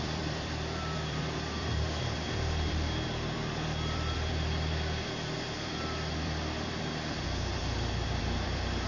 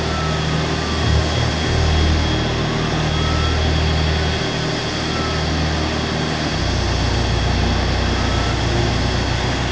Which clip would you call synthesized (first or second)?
first